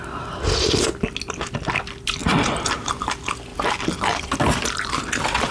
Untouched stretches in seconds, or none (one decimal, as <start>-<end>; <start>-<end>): 0.0-2.2; 3.1-5.5